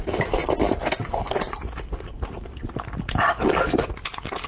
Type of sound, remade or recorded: recorded